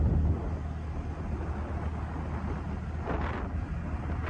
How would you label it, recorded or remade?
recorded